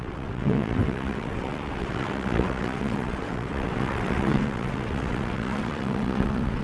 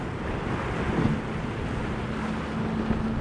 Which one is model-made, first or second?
first